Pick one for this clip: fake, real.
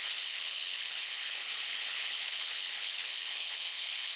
fake